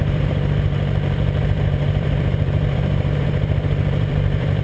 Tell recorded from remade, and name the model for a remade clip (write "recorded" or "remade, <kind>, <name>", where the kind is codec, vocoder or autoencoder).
remade, vocoder, BigVGAN v2